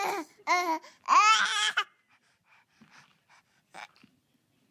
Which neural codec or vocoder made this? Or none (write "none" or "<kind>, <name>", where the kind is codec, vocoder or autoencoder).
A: none